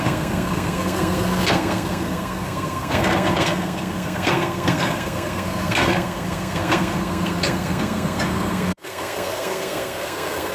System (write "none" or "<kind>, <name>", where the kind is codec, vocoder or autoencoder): codec, SNAC